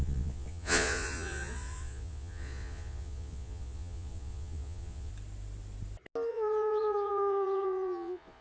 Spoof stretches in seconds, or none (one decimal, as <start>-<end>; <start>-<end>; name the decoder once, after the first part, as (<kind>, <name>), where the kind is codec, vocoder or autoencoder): 0.0-5.1 (vocoder, Vocos); 6.3-8.4